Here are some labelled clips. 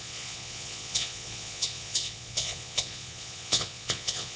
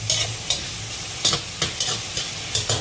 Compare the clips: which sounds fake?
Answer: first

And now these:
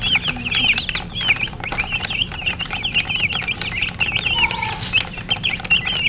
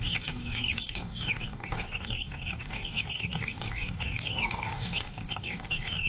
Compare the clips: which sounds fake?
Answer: second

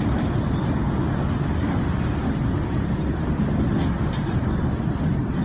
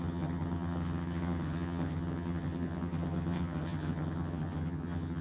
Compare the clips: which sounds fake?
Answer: second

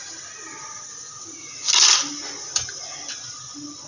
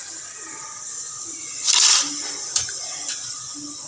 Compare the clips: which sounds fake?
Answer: second